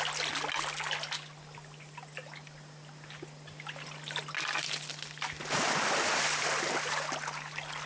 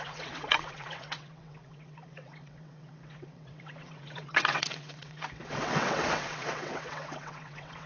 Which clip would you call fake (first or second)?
second